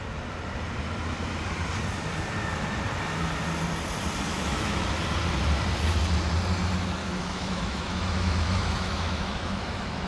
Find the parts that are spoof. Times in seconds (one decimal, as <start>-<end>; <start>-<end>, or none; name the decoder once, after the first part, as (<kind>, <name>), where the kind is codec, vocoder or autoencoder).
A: 4.3-4.9 (autoencoder, DAC-VAE); 7.0-10.1